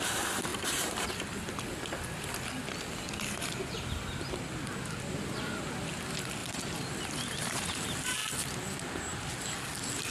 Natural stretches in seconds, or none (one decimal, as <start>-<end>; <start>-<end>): 0.0-0.5; 1.1-6.4; 7.6-10.1